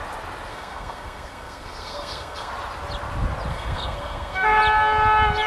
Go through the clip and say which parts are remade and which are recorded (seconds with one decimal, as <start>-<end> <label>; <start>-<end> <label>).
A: 0.0-0.5 recorded; 0.5-2.5 remade; 2.5-3.5 recorded; 3.5-4.6 remade; 4.6-5.5 recorded